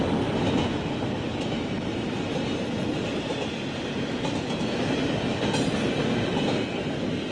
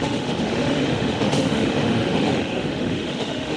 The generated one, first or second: second